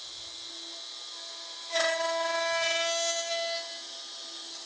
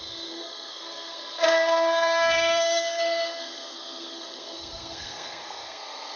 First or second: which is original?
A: first